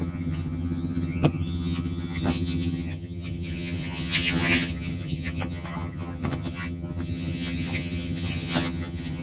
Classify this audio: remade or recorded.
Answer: remade